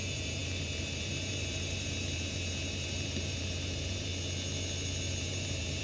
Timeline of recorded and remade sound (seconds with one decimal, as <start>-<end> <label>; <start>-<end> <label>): 0.0-4.1 remade; 4.1-5.1 recorded; 5.1-5.8 remade